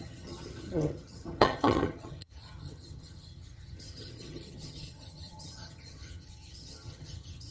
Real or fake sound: fake